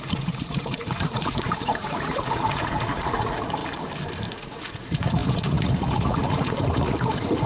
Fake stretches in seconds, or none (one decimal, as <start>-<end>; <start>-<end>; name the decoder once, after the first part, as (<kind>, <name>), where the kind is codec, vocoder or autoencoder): 0.0-3.6 (vocoder, Vocos); 4.3-7.5

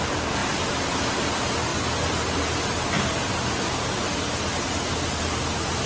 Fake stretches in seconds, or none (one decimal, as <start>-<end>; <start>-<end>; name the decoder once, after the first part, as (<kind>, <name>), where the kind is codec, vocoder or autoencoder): none

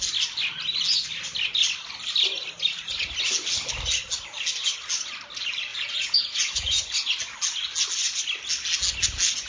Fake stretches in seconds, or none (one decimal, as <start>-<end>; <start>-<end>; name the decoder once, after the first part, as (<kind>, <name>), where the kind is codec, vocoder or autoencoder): 5.7-7.1 (vocoder, Vocos)

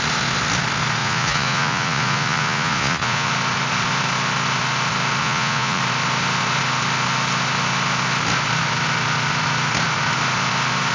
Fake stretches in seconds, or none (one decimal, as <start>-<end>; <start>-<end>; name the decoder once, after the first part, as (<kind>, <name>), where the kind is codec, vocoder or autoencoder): 1.0-3.3 (vocoder, Vocos); 5.2-5.8

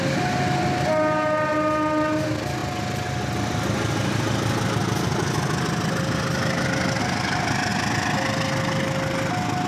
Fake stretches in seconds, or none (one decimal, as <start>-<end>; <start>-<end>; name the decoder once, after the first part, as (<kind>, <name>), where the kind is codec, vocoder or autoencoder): none